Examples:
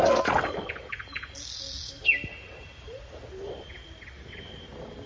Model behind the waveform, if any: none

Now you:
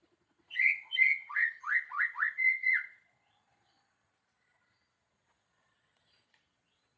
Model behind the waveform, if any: vocoder, Vocos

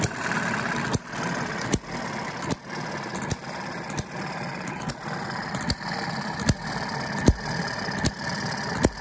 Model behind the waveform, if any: none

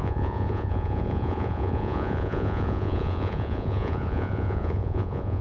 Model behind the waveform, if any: vocoder, Vocos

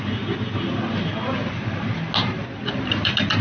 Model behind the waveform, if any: none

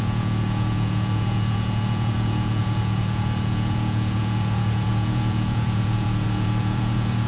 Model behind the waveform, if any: vocoder, Vocos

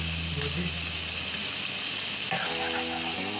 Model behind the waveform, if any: none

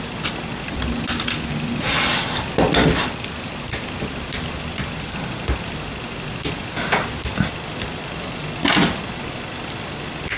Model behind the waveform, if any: none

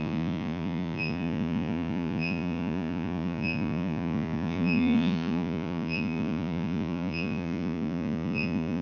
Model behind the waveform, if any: vocoder, Vocos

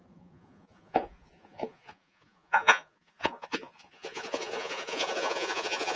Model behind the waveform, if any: vocoder, Vocos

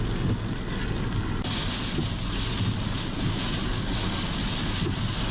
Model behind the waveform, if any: none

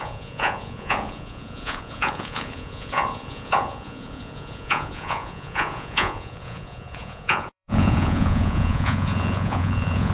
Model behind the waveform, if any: vocoder, Vocos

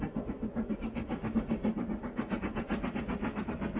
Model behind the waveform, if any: none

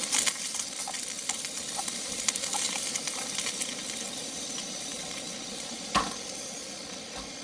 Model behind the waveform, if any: none